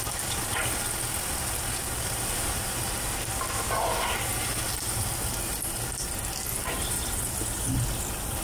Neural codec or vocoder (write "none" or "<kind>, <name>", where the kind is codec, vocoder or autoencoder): none